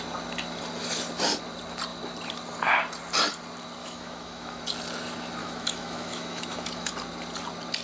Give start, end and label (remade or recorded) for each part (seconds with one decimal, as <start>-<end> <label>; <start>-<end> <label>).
0.0-3.8 recorded; 3.8-4.6 remade; 4.6-5.4 recorded; 5.4-6.9 remade; 6.9-7.8 recorded